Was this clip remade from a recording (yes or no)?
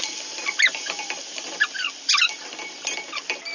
no